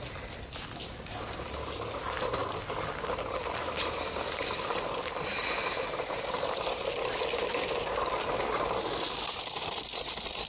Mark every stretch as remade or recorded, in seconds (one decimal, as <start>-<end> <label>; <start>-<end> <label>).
0.0-10.5 recorded